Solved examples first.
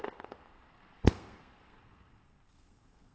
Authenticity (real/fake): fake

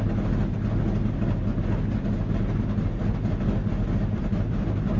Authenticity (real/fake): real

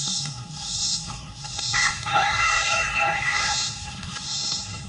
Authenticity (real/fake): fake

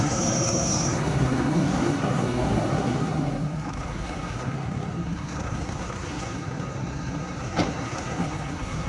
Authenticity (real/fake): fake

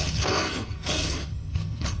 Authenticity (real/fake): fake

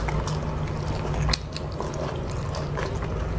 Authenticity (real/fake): real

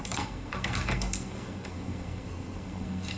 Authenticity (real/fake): fake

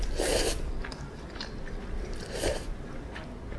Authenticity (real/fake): real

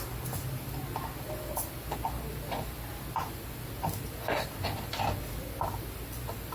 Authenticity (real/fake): real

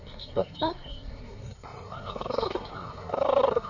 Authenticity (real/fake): fake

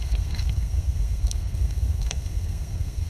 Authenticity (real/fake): fake